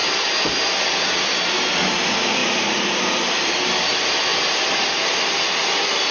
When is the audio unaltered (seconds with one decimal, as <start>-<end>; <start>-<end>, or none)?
0.0-6.1

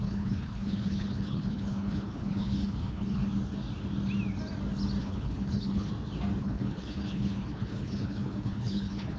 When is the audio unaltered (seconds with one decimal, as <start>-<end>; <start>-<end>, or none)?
3.2-5.0; 5.9-6.4